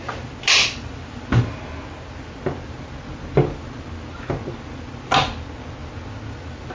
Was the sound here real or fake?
real